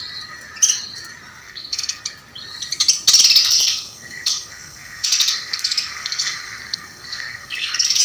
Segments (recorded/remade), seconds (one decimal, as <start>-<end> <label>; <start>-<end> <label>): 0.0-1.4 recorded; 1.4-2.0 remade; 2.0-3.4 recorded; 3.4-8.0 remade